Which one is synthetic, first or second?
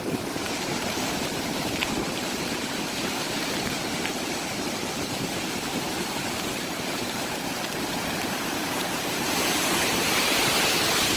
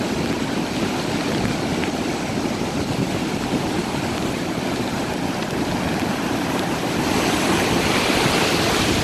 first